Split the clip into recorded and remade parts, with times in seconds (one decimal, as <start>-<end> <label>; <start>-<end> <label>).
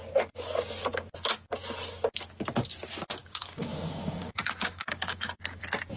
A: 0.0-3.2 recorded; 3.2-5.6 remade; 5.6-6.0 recorded